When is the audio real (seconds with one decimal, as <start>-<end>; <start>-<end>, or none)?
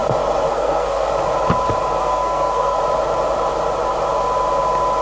0.0-0.5; 1.1-2.0; 2.8-5.0